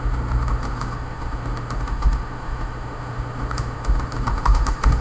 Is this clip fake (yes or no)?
yes